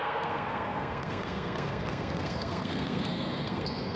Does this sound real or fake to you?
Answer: fake